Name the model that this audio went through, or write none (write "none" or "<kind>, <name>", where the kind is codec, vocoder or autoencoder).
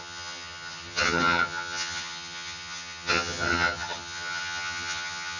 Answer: vocoder, HiFi-GAN